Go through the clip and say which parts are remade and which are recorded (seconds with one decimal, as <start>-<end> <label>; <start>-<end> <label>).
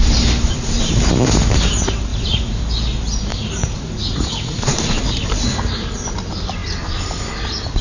0.0-2.1 recorded; 2.1-2.6 remade; 2.6-3.3 recorded; 3.3-5.0 remade; 5.0-7.8 recorded